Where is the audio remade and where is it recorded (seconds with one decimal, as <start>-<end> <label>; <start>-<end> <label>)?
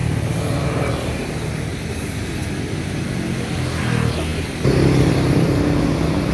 0.0-6.3 recorded